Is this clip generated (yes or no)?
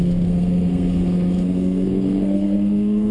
yes